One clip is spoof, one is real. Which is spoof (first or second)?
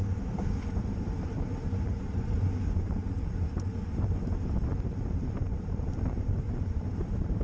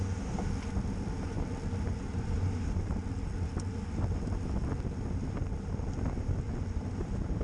first